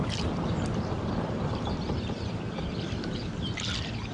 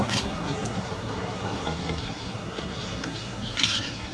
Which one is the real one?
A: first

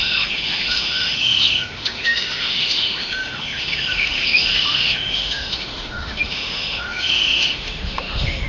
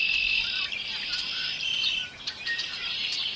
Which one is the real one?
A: second